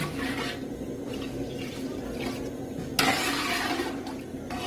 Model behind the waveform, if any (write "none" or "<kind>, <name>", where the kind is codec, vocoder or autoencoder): none